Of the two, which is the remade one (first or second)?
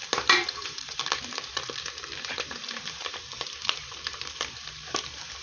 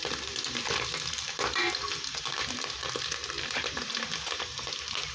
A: first